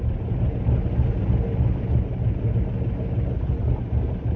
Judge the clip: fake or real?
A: real